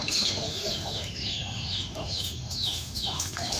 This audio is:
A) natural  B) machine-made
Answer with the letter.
B